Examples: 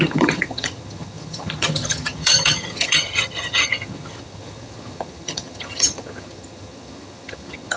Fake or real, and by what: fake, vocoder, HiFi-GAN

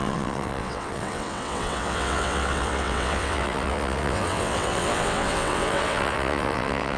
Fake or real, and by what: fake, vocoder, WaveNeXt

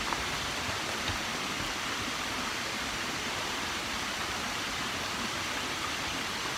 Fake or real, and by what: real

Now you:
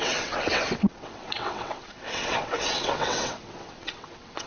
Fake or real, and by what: fake, vocoder, WaveNeXt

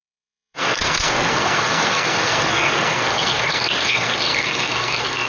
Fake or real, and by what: fake, codec, SNAC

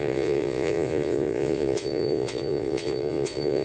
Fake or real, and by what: fake, vocoder, Vocos